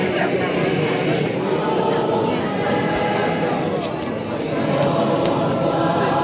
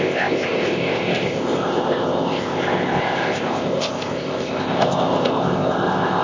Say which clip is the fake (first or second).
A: second